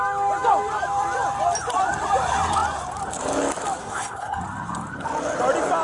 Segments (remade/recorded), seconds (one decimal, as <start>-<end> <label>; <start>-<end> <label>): 0.0-3.8 recorded; 3.8-4.4 remade; 4.4-5.8 recorded